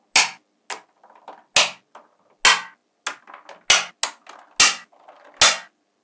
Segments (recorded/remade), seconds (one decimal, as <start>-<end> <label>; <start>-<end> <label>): 0.0-6.0 recorded